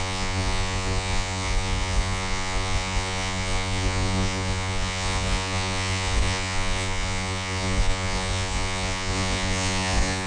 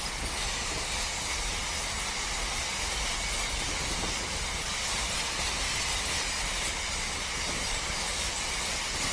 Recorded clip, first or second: second